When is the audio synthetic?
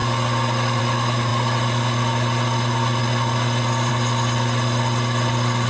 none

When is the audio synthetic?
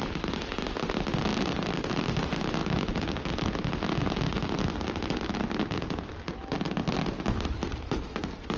none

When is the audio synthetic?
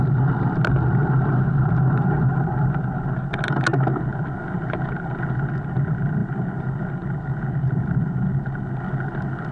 none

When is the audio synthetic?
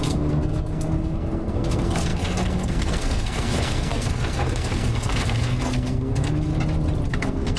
0.0-6.5 (codec, SNAC); 7.1-7.6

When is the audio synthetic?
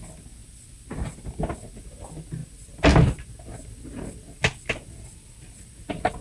none